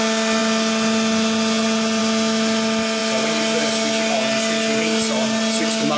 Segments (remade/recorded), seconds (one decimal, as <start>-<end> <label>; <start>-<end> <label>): 0.0-6.0 recorded